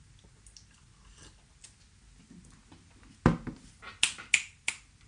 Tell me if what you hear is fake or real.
real